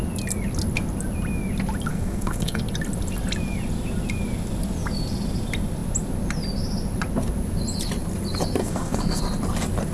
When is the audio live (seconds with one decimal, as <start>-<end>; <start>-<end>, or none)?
0.0-1.9; 2.6-8.6; 9.2-9.9